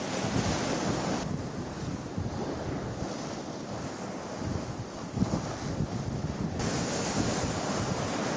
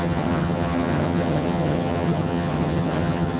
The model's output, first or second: second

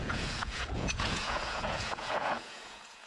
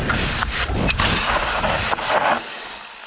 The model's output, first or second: first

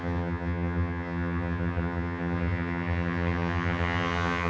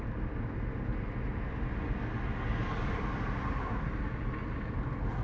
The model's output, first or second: first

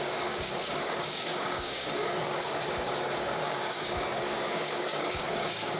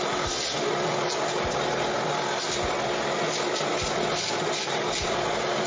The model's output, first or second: first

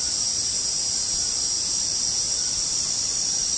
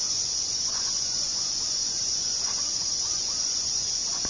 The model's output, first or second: second